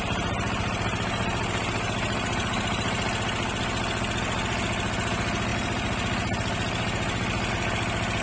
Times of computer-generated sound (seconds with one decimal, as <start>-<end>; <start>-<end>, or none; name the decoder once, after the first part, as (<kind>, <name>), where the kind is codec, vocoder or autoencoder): 0.9-3.1 (vocoder, BigVGAN v2)